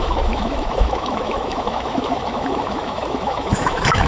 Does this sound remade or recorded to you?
remade